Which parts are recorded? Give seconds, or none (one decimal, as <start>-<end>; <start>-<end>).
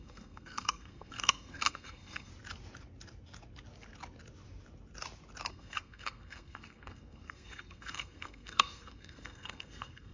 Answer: 2.3-5.5